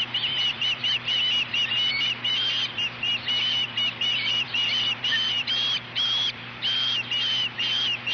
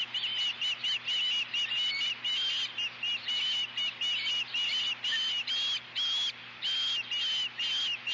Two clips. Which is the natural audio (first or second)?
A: second